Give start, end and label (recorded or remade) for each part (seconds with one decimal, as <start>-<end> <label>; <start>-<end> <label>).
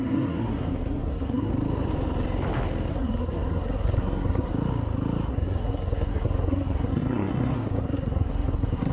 0.0-1.5 remade; 1.5-2.9 recorded; 2.9-4.5 remade; 4.5-5.3 recorded; 5.3-8.9 remade